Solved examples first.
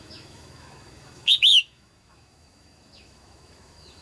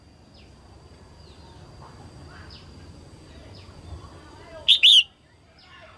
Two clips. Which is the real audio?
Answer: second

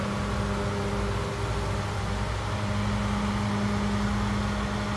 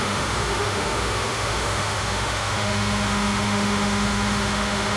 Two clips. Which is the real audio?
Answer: first